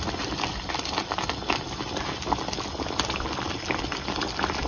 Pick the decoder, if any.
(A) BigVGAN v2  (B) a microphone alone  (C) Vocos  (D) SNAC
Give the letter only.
B